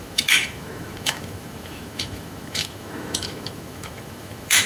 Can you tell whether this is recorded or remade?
remade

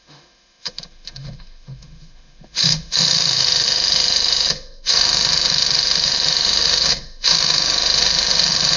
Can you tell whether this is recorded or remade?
remade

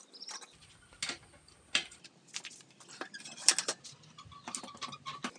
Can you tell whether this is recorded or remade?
recorded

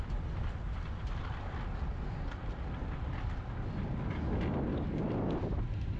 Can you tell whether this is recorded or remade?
recorded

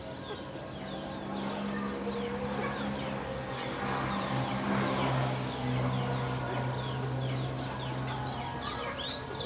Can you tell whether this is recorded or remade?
recorded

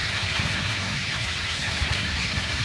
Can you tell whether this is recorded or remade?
remade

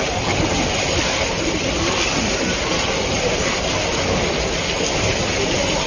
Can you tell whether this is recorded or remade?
recorded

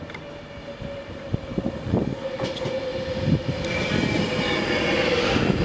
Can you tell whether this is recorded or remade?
recorded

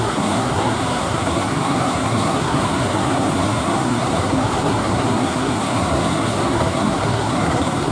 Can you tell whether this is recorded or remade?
remade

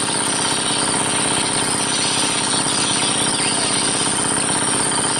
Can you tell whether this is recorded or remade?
recorded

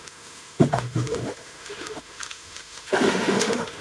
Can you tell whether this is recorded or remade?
remade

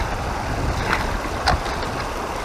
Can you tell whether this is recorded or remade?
recorded